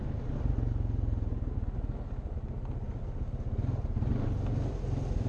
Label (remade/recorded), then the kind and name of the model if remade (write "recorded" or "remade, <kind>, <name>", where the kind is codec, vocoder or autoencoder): recorded